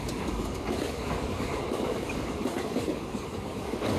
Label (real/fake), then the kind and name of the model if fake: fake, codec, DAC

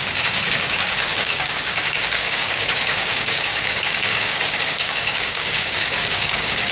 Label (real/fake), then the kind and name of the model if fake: fake, codec, DAC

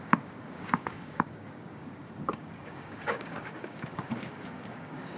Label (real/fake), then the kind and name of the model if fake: fake, codec, DAC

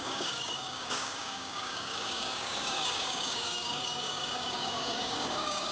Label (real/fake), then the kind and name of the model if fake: fake, codec, DAC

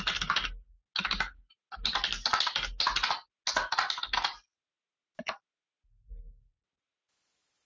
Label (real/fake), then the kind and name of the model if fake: real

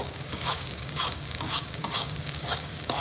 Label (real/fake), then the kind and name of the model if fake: fake, codec, DAC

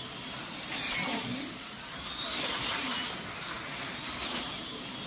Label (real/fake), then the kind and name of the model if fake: real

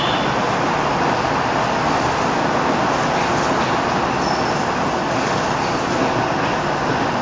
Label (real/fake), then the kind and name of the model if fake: real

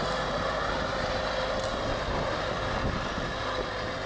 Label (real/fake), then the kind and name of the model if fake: real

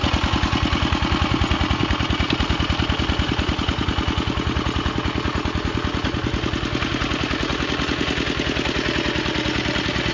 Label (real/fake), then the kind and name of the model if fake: real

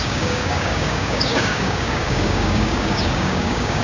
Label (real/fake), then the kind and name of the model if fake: fake, codec, DAC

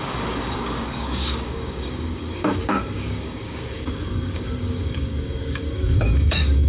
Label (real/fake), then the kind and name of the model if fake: fake, codec, DAC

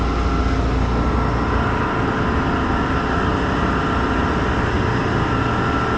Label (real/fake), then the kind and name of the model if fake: real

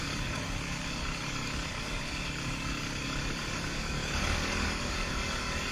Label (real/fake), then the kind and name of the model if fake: fake, codec, DAC